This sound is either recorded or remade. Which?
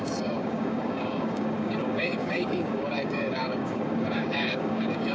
remade